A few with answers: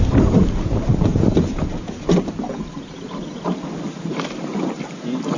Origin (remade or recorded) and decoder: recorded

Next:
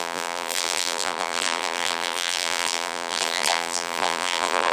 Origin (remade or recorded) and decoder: remade, vocoder, BigVGAN v2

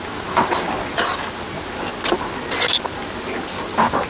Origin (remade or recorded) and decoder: recorded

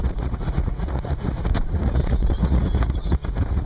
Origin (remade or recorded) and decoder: remade, vocoder, Vocos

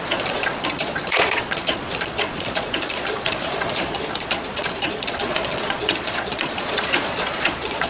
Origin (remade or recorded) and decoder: remade, vocoder, Vocos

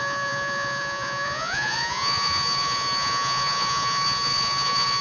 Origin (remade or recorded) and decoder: remade, vocoder, Vocos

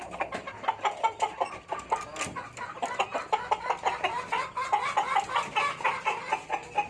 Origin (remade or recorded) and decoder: recorded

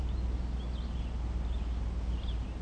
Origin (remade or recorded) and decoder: recorded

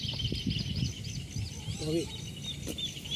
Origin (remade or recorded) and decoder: recorded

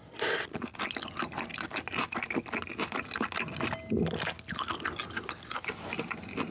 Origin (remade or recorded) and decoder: recorded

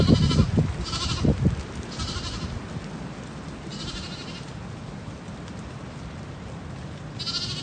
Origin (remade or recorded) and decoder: recorded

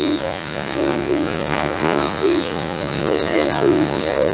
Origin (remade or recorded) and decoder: remade, vocoder, Vocos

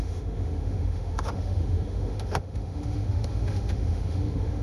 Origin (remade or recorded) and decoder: remade, autoencoder, DAC-VAE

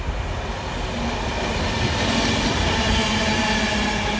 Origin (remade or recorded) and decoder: recorded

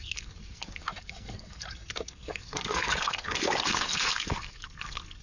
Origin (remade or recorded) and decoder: remade, codec, SNAC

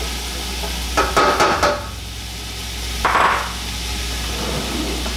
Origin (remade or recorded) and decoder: recorded